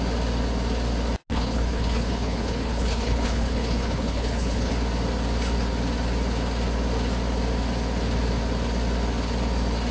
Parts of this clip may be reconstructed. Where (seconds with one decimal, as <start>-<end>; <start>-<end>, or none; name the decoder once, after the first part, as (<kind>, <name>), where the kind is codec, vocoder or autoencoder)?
1.3-4.7 (codec, HILCodec)